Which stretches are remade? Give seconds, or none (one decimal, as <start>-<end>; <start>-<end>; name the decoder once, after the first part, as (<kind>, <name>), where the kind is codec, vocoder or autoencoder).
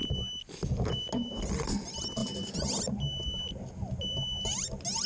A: none